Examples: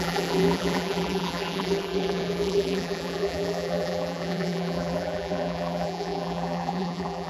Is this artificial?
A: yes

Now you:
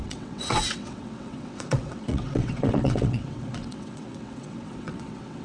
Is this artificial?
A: yes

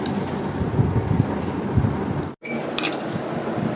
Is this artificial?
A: no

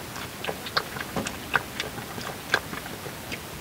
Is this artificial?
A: no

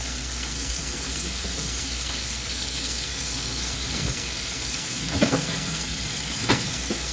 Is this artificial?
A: yes